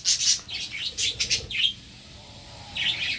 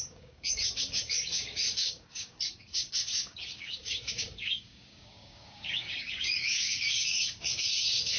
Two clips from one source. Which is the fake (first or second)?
second